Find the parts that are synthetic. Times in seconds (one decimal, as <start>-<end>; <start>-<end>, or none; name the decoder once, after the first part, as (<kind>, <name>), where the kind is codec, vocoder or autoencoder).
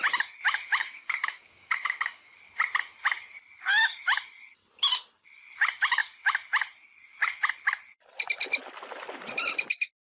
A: 0.8-2.4 (codec, DAC)